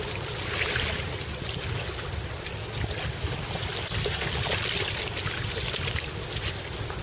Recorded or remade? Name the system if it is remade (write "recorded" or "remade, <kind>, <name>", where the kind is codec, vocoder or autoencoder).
recorded